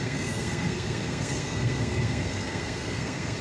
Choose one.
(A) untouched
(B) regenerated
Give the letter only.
B